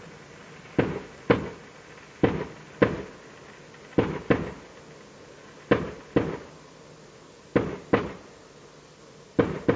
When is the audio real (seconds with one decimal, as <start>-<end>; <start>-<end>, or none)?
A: 0.0-9.8